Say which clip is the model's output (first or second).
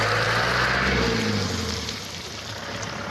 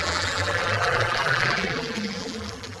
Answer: second